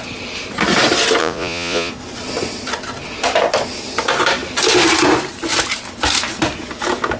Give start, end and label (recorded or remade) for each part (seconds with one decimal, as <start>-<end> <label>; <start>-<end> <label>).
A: 0.0-1.2 recorded; 1.2-1.9 remade; 1.9-7.2 recorded